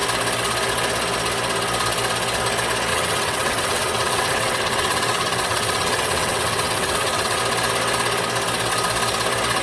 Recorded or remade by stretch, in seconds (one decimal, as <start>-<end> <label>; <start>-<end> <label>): 0.0-2.9 recorded; 2.9-7.4 remade; 7.4-9.6 recorded